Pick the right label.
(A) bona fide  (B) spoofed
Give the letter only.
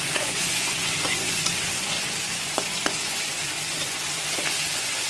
B